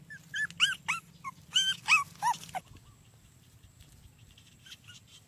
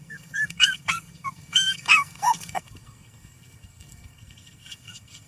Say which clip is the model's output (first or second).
second